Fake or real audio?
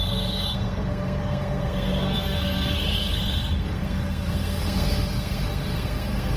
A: fake